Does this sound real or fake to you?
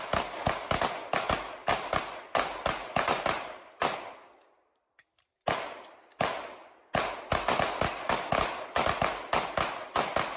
real